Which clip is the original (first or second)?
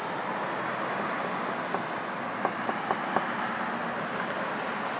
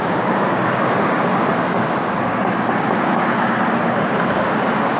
first